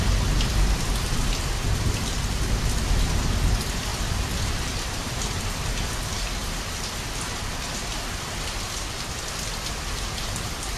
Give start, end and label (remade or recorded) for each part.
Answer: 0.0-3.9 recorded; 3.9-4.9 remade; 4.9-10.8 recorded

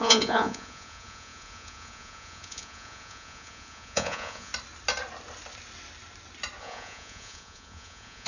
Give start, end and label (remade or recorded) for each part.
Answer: 0.0-4.5 remade; 4.5-6.6 recorded; 6.6-8.3 remade

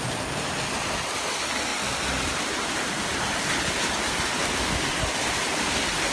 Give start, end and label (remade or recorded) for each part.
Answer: 0.0-6.1 recorded

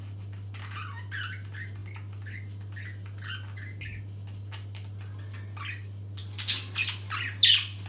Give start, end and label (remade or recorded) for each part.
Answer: 0.0-7.9 recorded

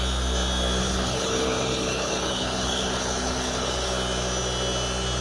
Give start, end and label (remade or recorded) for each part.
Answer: 0.0-0.8 recorded; 0.8-3.9 remade; 3.9-5.2 recorded

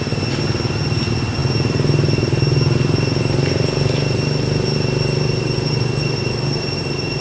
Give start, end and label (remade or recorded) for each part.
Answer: 0.0-7.2 recorded

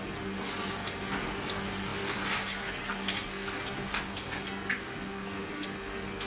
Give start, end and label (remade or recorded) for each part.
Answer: 0.0-6.3 remade